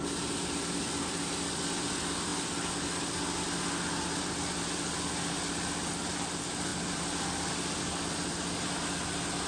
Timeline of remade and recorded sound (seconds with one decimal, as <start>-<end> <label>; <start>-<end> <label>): 0.0-9.5 recorded